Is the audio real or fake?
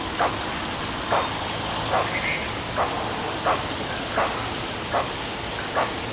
real